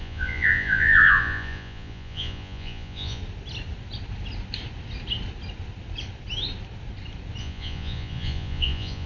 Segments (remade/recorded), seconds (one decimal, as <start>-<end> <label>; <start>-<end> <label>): 0.0-3.2 remade; 3.2-7.4 recorded; 7.4-9.1 remade